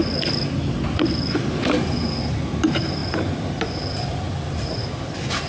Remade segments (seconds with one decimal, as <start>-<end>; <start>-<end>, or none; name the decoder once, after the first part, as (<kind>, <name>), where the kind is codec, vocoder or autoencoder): none